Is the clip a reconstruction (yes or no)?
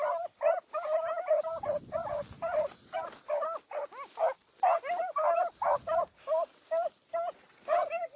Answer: no